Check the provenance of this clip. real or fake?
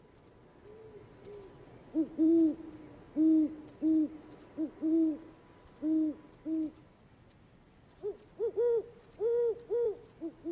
real